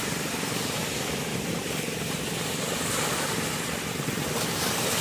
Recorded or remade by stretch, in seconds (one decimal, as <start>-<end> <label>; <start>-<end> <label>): 0.0-5.0 remade

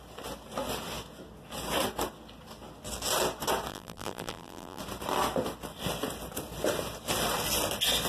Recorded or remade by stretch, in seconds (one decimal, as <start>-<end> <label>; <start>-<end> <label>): 0.0-3.7 recorded; 3.7-4.8 remade; 4.8-8.1 recorded

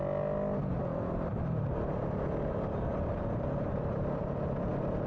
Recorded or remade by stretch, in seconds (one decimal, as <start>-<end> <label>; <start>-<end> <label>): 0.0-0.9 recorded; 0.9-1.6 remade; 1.6-2.9 recorded; 2.9-4.2 remade; 4.2-5.1 recorded

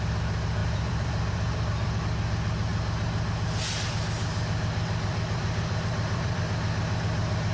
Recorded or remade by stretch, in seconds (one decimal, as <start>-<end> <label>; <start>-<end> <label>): 0.0-0.6 recorded; 0.6-2.0 remade; 2.0-4.3 recorded; 4.3-6.4 remade; 6.4-7.5 recorded

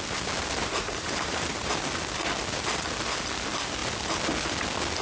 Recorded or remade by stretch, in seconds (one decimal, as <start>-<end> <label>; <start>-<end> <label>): 0.0-0.6 recorded; 0.6-1.7 remade; 1.7-5.0 recorded